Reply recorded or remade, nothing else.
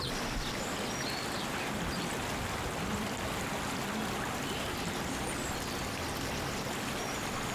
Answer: recorded